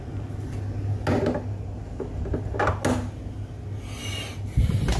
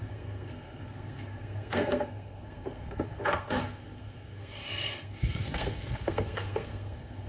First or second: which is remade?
second